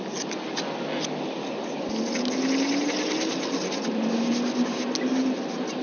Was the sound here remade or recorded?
recorded